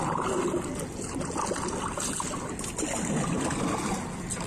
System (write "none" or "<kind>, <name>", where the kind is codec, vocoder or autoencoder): none